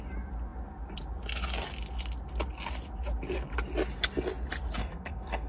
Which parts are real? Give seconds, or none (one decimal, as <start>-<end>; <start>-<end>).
0.0-4.8